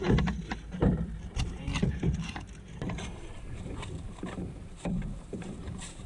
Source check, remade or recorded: remade